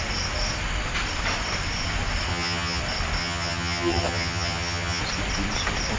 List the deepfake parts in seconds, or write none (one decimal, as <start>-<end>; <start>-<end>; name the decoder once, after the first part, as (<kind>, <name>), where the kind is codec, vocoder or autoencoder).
2.3-2.8 (vocoder, HiFi-GAN); 3.2-5.0